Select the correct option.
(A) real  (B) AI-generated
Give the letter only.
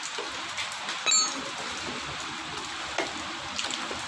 A